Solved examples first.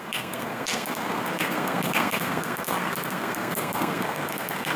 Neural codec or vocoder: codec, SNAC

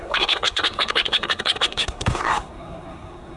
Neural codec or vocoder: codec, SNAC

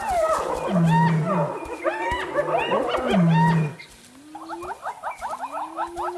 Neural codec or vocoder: none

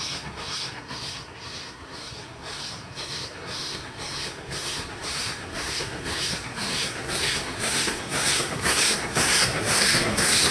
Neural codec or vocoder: codec, SNAC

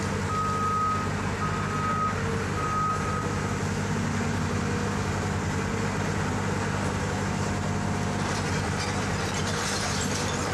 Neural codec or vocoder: none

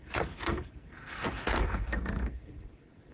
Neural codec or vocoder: codec, SNAC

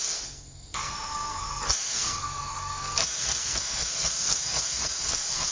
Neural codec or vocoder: codec, SNAC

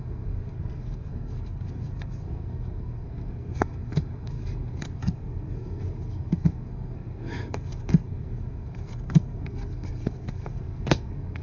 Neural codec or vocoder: codec, SNAC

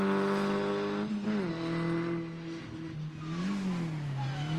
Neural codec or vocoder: none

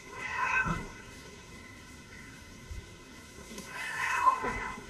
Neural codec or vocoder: codec, SNAC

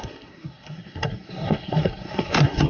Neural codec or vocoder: codec, SNAC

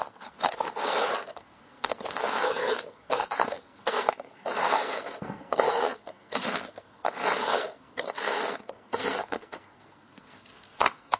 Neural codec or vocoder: codec, SNAC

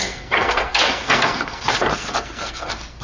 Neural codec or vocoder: codec, SNAC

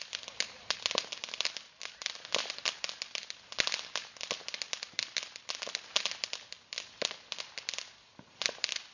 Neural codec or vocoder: none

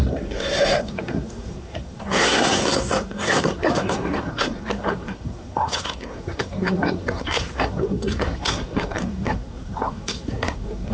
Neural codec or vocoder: codec, SNAC